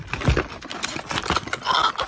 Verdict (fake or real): real